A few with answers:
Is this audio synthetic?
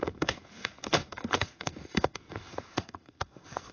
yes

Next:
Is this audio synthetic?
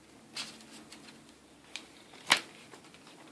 no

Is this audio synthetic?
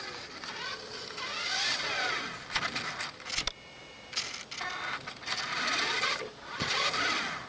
no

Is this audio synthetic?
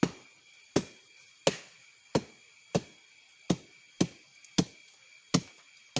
no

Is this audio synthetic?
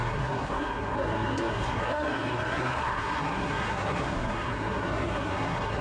yes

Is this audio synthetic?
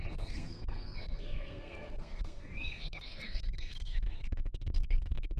yes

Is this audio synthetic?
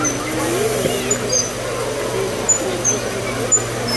no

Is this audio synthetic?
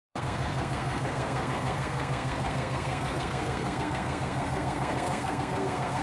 yes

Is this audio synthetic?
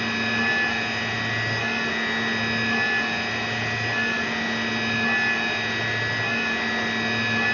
no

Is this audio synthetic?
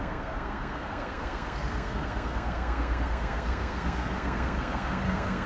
yes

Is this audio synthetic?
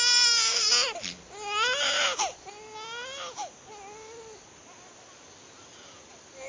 no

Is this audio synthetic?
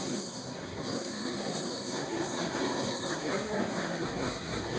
yes